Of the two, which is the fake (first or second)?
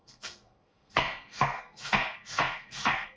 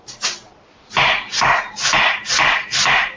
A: first